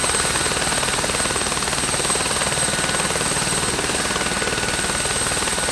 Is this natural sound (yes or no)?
yes